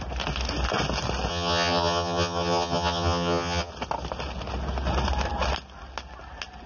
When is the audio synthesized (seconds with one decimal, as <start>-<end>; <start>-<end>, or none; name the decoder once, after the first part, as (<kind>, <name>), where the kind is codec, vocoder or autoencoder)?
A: 1.3-3.7 (vocoder, HiFi-GAN)

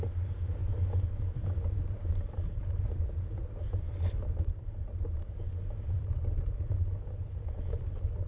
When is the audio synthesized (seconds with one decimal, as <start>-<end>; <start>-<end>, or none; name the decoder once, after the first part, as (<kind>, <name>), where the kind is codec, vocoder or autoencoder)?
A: 0.0-0.6 (vocoder, BigVGAN v2); 1.1-8.3